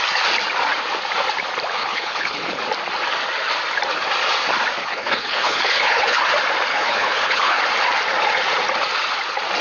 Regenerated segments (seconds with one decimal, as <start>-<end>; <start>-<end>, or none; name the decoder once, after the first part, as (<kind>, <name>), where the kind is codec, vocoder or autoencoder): 1.8-2.6 (codec, HILCodec); 4.8-6.2; 6.7-7.6